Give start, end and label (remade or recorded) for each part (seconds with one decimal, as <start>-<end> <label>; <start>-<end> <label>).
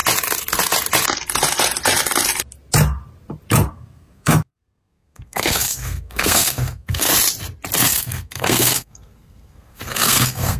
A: 0.0-3.7 recorded; 3.7-7.1 remade; 7.1-7.8 recorded; 7.8-10.6 remade